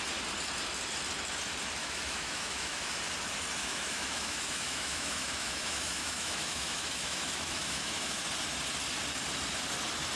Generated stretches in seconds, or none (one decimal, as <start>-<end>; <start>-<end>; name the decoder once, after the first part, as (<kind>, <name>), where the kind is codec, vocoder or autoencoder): 1.8-2.9 (autoencoder, DAC-VAE); 3.6-8.2